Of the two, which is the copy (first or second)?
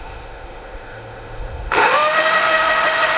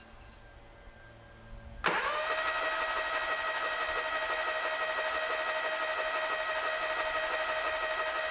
first